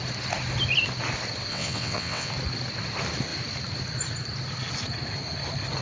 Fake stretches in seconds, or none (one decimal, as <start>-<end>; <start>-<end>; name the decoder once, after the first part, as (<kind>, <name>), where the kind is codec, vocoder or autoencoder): 1.5-2.3 (vocoder, WaveNeXt)